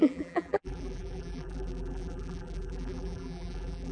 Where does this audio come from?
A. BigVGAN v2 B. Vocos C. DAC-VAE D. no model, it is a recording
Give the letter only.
A